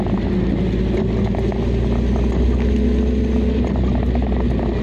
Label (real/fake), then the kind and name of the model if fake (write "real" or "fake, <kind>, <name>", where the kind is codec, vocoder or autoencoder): real